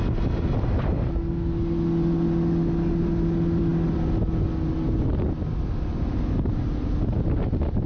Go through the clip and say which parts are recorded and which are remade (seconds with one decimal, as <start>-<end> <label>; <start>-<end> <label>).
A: 0.0-7.9 recorded